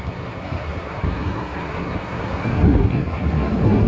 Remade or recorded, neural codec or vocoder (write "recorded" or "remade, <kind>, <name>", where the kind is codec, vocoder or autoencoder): remade, codec, SNAC